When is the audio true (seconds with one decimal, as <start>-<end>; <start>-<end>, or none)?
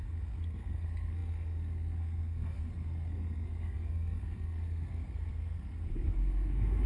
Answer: none